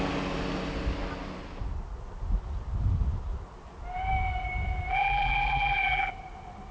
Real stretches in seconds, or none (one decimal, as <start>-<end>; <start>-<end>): 0.0-4.9; 6.1-6.7